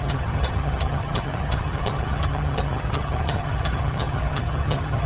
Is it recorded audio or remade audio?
remade